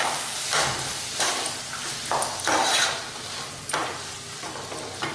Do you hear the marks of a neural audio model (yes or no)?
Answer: no